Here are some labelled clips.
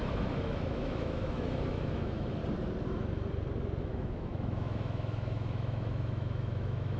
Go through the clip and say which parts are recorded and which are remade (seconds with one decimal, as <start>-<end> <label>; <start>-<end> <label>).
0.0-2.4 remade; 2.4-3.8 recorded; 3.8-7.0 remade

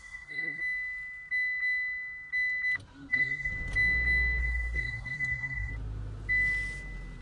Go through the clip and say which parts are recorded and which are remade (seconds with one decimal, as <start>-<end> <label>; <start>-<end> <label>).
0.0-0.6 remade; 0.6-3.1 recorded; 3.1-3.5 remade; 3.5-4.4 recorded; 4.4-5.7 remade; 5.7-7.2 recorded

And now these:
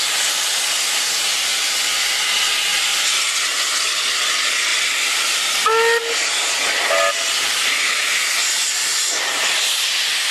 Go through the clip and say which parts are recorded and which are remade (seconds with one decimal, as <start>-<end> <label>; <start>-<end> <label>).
0.0-10.3 recorded